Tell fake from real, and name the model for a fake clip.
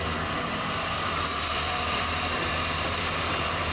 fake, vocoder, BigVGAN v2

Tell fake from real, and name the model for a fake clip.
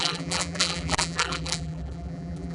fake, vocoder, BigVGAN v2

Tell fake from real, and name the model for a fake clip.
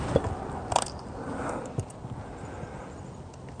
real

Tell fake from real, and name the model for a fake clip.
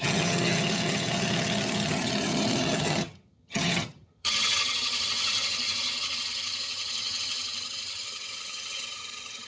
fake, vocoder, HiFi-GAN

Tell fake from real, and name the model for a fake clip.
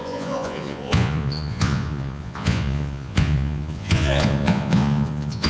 fake, vocoder, Vocos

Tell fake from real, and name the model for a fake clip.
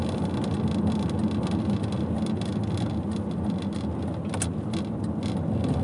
real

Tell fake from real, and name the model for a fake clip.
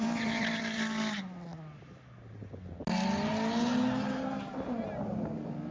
real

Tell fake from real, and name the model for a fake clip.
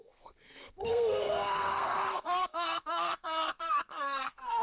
fake, codec, SNAC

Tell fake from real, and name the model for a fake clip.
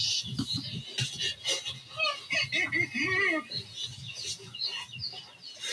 real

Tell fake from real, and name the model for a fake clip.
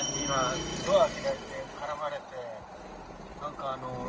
real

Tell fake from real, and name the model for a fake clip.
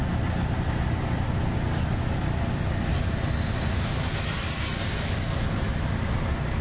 real